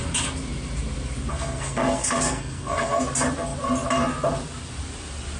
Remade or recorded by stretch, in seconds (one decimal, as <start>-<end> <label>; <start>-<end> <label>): 0.0-1.3 recorded; 1.3-3.0 remade; 3.0-5.4 recorded